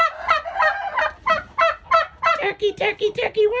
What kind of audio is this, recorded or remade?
recorded